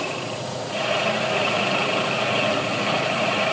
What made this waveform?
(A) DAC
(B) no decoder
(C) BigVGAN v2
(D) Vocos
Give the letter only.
D